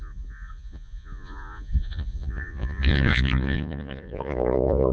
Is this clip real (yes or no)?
no